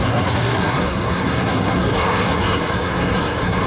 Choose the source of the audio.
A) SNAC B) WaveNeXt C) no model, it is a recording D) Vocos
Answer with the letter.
A